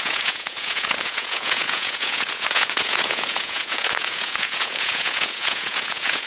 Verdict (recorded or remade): remade